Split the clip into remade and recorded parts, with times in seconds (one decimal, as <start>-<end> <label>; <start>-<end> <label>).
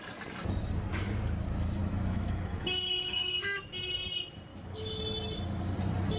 0.0-1.8 recorded; 1.8-3.6 remade; 3.6-4.5 recorded; 4.5-5.0 remade; 5.0-6.2 recorded